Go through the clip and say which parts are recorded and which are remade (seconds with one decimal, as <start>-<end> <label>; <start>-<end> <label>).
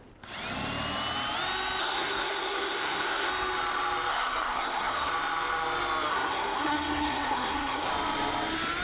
0.0-1.8 recorded; 1.8-3.3 remade; 3.3-4.1 recorded; 4.1-5.1 remade; 5.1-6.1 recorded; 6.1-7.9 remade; 7.9-8.8 recorded